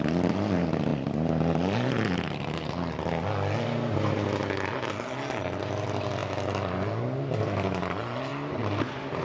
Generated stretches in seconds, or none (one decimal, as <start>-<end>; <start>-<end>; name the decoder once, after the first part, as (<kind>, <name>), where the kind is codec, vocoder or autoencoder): none